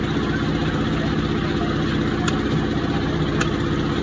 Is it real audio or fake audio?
real